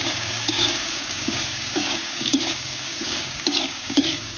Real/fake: fake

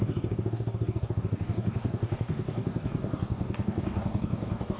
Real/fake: fake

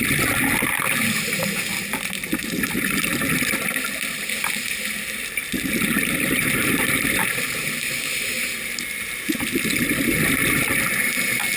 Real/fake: real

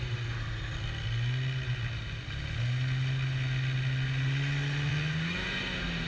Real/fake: real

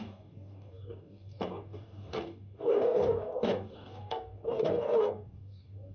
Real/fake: fake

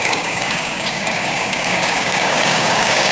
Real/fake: fake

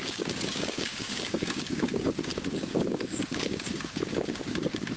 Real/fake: fake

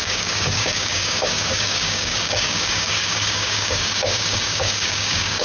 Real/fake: fake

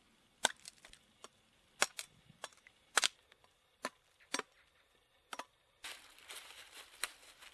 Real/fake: real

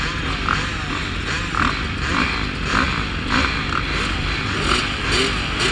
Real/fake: real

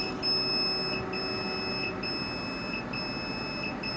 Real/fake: real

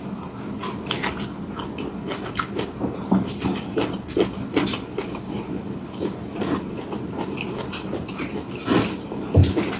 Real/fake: real